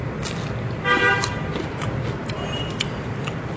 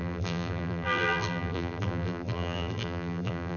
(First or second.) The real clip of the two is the first